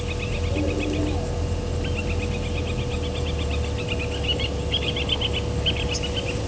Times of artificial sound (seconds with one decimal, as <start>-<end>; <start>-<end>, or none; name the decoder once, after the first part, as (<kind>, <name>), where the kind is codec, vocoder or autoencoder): none